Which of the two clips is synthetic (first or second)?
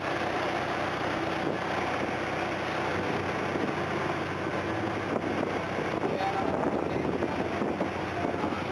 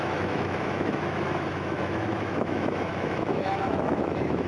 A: second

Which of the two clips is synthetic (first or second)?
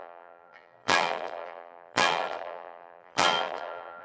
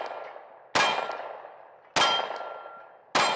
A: first